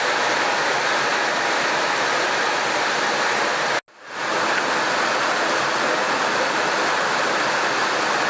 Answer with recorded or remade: recorded